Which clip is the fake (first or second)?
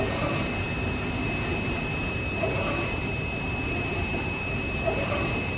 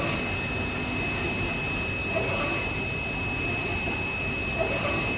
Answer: first